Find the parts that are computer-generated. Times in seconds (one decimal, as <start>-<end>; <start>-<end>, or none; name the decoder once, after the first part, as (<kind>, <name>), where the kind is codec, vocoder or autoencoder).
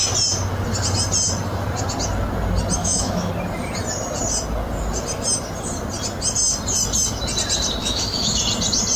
2.8-3.3 (autoencoder, DAC-VAE); 7.8-8.4